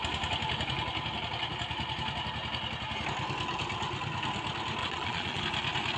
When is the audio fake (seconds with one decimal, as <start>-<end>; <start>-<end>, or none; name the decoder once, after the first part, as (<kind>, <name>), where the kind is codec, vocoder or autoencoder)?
4.8-5.4 (vocoder, Vocos)